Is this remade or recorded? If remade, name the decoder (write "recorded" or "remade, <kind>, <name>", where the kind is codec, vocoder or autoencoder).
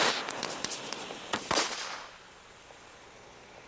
remade, vocoder, BigVGAN v2